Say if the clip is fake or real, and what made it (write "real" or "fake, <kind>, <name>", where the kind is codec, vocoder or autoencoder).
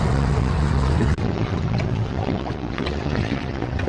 fake, vocoder, WaveNeXt